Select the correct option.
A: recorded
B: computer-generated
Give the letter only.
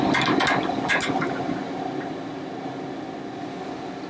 A